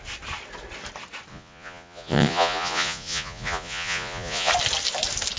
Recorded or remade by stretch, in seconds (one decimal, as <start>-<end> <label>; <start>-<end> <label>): 0.0-1.3 recorded; 1.3-4.5 remade; 4.5-5.4 recorded